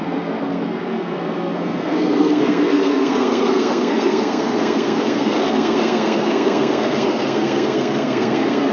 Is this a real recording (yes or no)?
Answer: no